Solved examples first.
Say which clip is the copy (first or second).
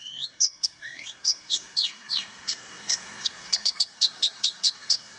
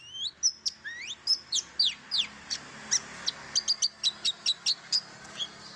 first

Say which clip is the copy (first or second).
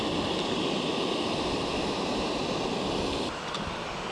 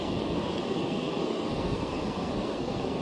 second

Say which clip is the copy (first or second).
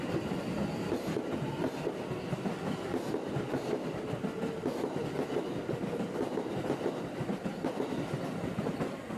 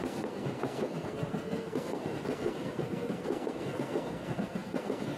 second